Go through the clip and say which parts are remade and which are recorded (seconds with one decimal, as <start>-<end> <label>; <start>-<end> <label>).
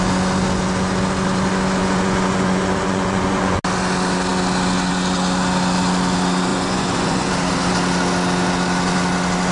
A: 0.0-1.8 recorded; 1.8-3.6 remade; 3.6-6.5 recorded; 6.5-7.3 remade; 7.3-9.5 recorded